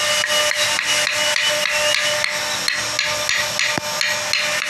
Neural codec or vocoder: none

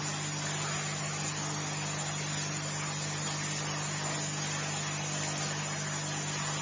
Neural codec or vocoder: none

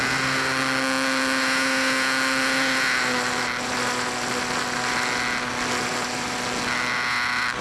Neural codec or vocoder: none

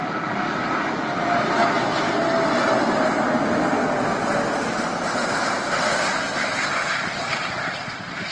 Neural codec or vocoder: none